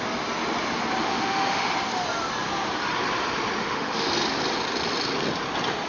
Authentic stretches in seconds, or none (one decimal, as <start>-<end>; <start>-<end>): 0.0-1.0; 1.7-3.6; 4.1-5.9